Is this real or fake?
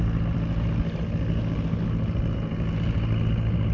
real